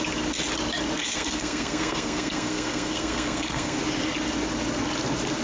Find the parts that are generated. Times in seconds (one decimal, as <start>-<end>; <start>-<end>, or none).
1.0-3.8